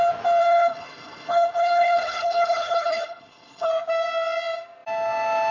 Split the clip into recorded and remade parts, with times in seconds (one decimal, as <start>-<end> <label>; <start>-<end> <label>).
0.0-0.4 recorded; 0.4-3.7 remade; 3.7-5.5 recorded